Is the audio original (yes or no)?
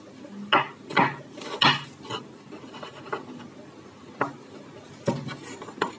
yes